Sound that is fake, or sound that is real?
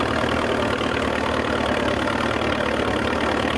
real